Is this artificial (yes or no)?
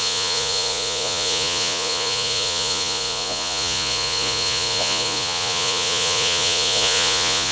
yes